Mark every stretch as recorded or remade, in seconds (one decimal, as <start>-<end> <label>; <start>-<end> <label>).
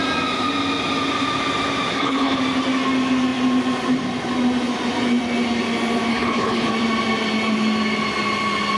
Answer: 0.0-1.9 recorded; 1.9-2.4 remade; 2.4-6.1 recorded; 6.1-6.7 remade; 6.7-8.8 recorded